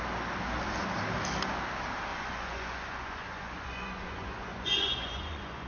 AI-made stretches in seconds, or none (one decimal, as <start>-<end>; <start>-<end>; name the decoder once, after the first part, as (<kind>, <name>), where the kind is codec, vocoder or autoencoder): 2.1-5.7 (vocoder, Vocos)